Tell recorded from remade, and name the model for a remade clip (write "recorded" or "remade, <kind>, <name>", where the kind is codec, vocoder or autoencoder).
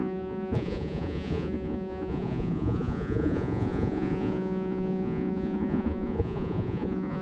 remade, vocoder, Vocos